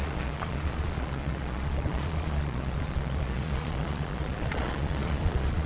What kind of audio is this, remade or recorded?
remade